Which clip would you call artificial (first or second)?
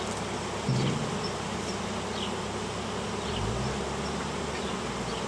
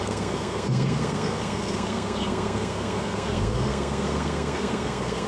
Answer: second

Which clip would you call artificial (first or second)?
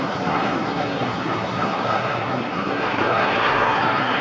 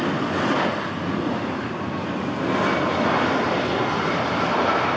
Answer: first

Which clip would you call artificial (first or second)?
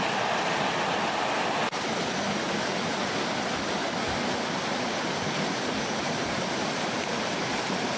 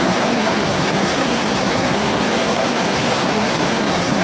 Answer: second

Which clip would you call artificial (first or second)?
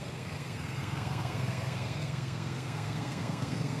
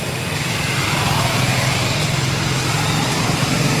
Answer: first